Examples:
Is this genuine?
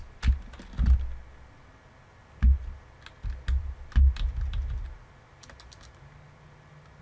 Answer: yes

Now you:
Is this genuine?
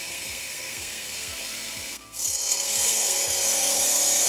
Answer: no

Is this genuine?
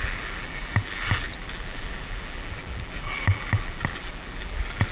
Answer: no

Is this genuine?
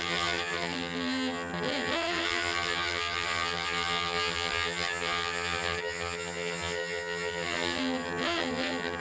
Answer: no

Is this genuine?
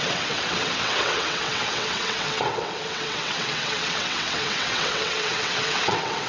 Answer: no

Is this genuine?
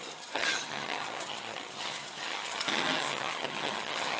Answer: no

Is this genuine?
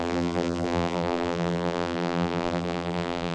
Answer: no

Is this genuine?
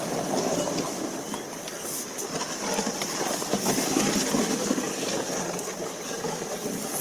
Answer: yes